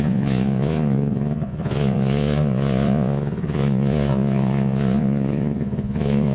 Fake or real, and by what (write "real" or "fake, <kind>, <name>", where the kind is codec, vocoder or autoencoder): fake, vocoder, Vocos